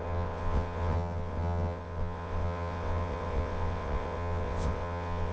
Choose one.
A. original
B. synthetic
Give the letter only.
B